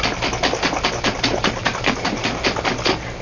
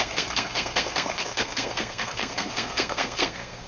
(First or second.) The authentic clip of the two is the first